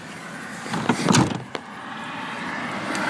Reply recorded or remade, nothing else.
recorded